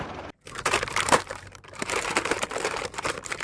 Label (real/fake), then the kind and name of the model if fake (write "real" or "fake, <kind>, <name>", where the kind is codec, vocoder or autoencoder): fake, vocoder, BigVGAN v2